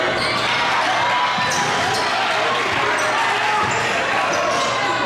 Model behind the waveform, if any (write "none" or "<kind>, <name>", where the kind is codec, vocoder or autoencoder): none